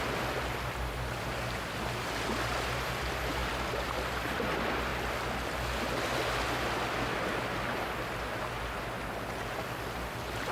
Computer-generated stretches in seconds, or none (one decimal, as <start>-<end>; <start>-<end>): 3.4-4.5